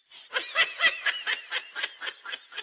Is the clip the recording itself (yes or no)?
yes